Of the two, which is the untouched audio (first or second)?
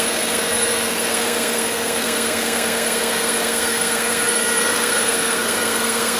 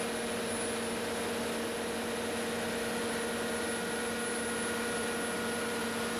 second